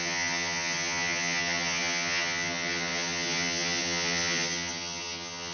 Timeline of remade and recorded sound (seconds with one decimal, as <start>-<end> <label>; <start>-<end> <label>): 0.0-5.5 remade